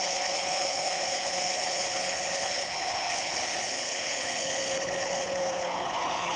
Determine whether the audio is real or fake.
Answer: fake